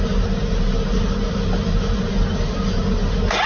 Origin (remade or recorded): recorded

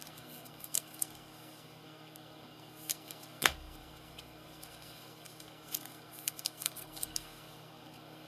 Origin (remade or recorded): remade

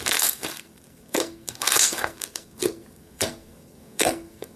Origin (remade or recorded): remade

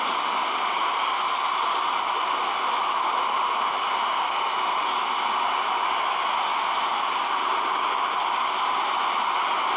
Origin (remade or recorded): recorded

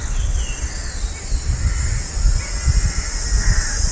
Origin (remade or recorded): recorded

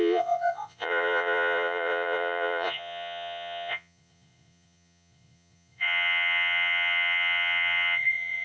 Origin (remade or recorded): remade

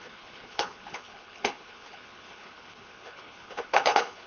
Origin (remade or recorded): remade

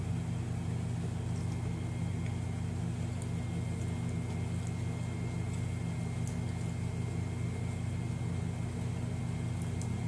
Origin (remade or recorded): recorded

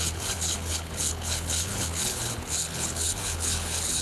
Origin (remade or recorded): remade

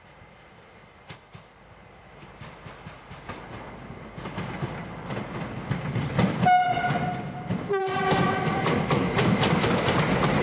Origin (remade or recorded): recorded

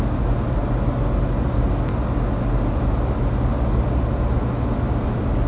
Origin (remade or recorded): recorded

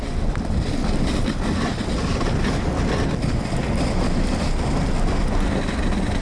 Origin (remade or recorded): recorded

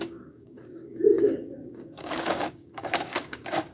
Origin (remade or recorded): remade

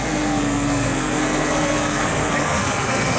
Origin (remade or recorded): remade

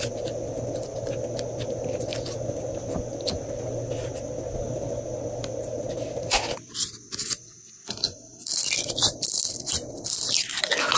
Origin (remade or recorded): recorded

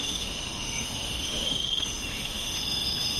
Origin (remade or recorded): remade